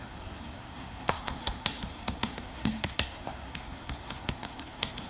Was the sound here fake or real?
fake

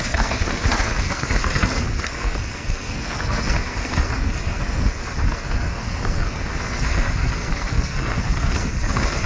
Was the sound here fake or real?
fake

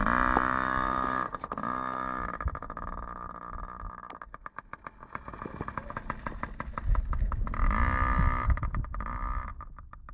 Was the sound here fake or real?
real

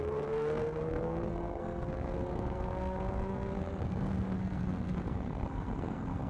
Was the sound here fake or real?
fake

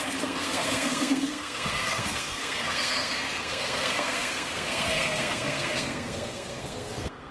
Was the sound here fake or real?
fake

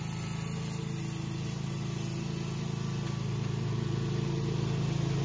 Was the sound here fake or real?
real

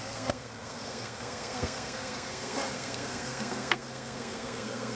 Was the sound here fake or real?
fake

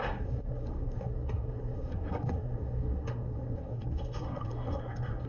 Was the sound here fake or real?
fake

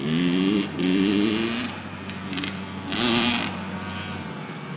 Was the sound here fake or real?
real